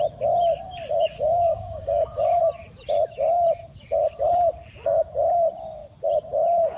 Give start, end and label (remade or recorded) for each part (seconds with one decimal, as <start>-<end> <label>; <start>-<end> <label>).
0.0-0.9 recorded; 0.9-2.4 remade; 2.4-6.8 recorded